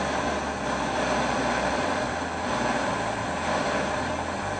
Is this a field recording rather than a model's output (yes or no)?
yes